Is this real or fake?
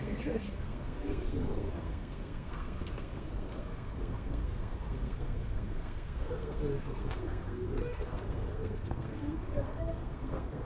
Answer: fake